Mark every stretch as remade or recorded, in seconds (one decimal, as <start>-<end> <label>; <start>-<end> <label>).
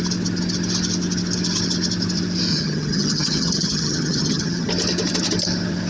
0.0-2.5 recorded; 2.5-4.7 remade; 4.7-5.9 recorded